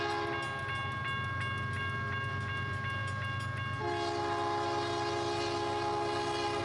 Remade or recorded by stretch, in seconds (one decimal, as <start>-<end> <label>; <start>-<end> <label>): 0.0-6.6 recorded